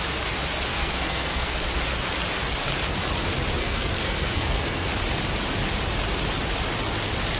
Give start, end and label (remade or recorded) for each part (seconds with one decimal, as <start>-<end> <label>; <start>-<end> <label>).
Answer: 0.0-0.7 recorded; 0.7-1.6 remade; 1.6-3.6 recorded; 3.6-4.9 remade; 4.9-7.4 recorded